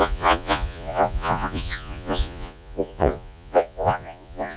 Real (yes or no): no